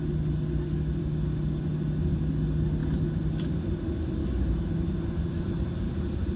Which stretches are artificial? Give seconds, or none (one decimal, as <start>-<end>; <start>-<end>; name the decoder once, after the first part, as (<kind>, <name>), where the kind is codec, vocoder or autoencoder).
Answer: 1.0-1.6 (codec, DAC); 4.2-4.9